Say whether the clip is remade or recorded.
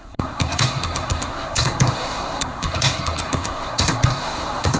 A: remade